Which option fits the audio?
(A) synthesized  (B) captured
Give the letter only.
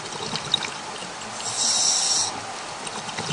B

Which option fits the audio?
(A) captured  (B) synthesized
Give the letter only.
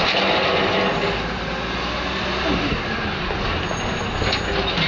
A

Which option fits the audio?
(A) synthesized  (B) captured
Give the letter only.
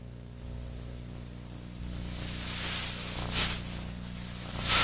B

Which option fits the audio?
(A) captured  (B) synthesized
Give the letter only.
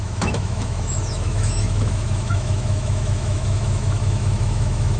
B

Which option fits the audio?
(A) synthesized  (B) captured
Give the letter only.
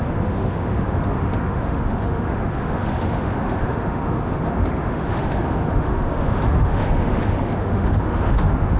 A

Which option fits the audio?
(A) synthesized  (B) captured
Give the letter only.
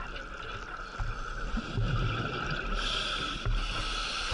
B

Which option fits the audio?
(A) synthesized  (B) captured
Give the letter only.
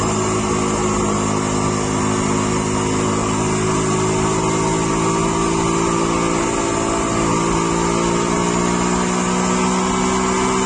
B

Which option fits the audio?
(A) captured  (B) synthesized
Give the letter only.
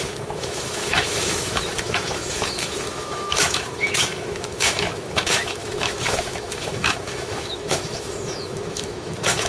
B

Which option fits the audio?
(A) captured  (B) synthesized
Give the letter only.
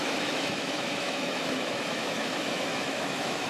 B